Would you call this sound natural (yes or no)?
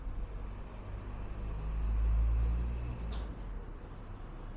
yes